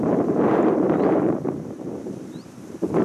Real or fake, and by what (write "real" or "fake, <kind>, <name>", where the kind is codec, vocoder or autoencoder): fake, vocoder, BigVGAN v2